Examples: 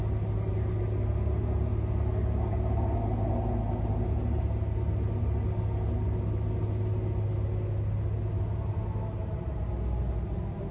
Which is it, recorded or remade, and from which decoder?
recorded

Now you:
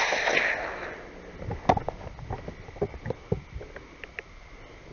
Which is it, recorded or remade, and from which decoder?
recorded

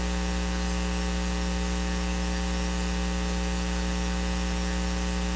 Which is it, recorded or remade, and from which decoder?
recorded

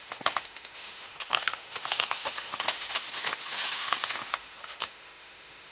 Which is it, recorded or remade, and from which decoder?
remade, autoencoder, DAC-VAE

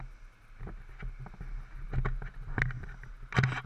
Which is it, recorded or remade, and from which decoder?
recorded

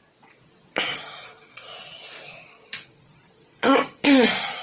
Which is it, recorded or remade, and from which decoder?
remade, vocoder, Vocos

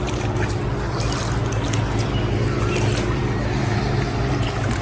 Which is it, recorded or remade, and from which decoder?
recorded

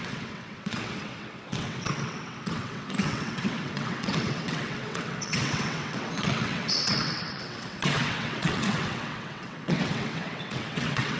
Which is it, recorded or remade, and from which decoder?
remade, vocoder, WaveNeXt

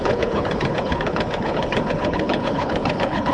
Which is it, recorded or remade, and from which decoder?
remade, codec, HILCodec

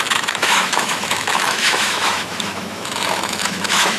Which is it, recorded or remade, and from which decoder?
remade, autoencoder, DAC-VAE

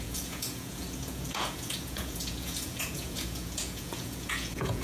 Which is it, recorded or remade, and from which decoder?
remade, vocoder, Vocos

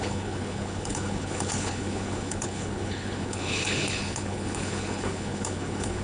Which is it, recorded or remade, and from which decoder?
remade, codec, HILCodec